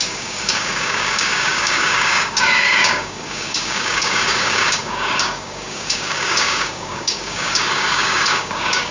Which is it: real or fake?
fake